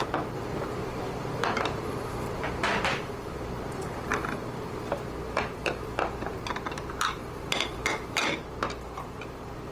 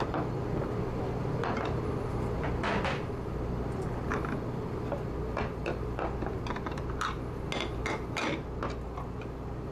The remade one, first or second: first